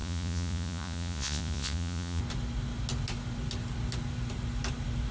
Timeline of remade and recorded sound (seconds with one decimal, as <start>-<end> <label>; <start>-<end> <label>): 0.0-2.2 remade; 2.2-5.1 recorded